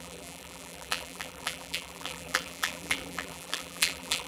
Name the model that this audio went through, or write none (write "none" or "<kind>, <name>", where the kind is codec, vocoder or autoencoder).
vocoder, BigVGAN v2